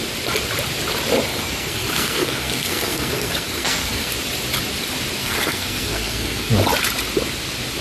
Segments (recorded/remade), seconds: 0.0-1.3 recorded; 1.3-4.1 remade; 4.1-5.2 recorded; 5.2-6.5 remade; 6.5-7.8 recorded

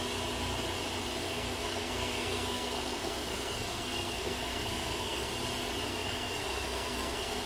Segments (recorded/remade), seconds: 0.0-1.2 recorded; 1.2-5.3 remade; 5.3-5.9 recorded; 5.9-7.5 remade

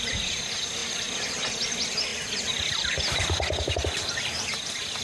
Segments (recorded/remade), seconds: 0.0-5.0 recorded

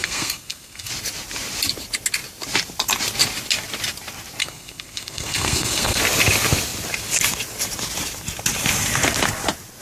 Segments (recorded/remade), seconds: 0.0-0.9 remade; 0.9-4.4 recorded; 4.4-6.0 remade; 6.0-9.8 recorded

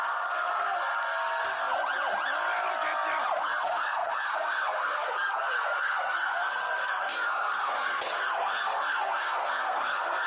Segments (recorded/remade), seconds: 0.0-1.6 remade; 1.6-3.4 recorded; 3.4-10.3 remade

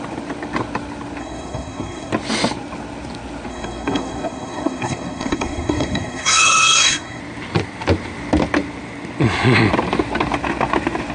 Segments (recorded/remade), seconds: 0.0-1.2 recorded; 1.2-2.1 remade; 2.1-3.5 recorded; 3.5-7.2 remade; 7.2-11.1 recorded

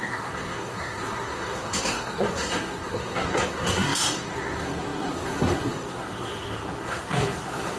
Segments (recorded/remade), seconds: 0.0-7.8 remade